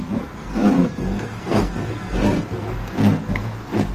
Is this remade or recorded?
remade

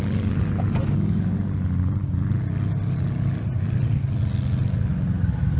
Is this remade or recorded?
recorded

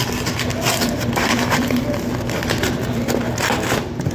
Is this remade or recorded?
recorded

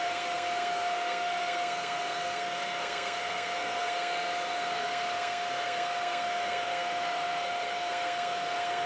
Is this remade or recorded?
remade